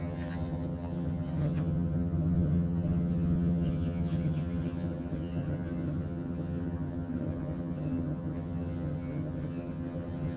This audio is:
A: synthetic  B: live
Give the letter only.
A